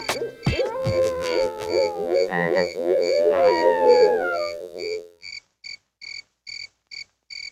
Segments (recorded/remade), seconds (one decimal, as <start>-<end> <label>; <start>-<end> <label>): 0.0-0.8 recorded; 0.8-5.3 remade; 5.3-7.5 recorded